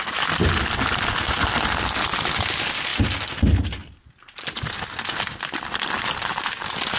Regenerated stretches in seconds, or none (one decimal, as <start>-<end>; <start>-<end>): none